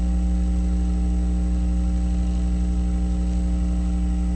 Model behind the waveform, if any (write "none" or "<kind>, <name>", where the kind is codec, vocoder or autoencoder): none